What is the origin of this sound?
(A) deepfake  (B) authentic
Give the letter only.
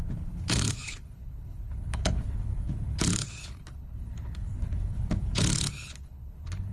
A